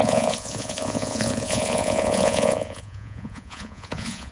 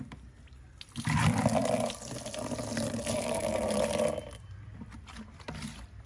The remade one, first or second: first